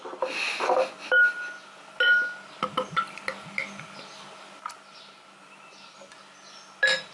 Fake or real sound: real